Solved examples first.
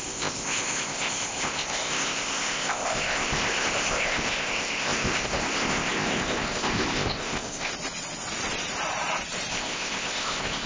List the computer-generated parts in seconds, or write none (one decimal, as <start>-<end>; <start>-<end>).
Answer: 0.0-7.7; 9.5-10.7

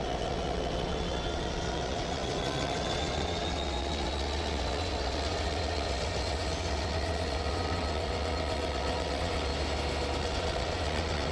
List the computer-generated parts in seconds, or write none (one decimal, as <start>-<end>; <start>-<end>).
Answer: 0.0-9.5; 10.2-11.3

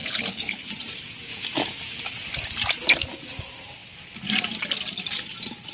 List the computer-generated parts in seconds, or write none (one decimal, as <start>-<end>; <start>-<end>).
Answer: 0.0-0.7

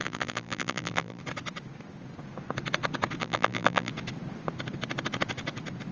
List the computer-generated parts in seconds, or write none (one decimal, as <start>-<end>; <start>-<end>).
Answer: 0.0-1.2; 3.2-3.9

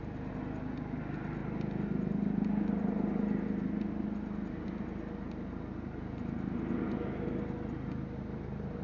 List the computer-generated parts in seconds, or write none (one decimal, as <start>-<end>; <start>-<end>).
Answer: none

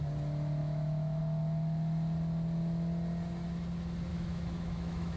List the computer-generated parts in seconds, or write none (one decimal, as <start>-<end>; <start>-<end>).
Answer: 0.6-1.2; 4.1-5.2